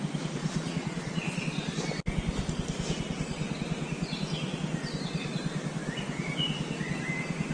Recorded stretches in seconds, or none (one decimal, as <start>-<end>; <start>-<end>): 0.0-0.5; 1.4-7.5